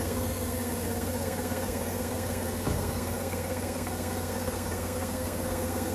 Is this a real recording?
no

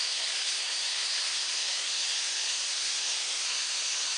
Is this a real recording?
no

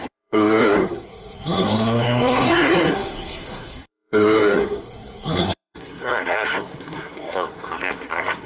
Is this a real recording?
no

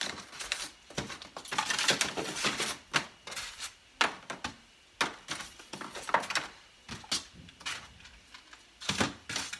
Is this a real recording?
yes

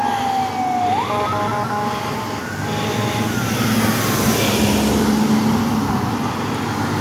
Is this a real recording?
yes